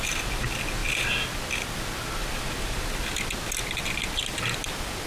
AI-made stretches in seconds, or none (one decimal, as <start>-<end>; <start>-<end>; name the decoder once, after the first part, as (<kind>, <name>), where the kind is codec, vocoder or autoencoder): none